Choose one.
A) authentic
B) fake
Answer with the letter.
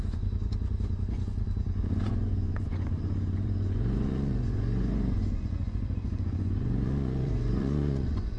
B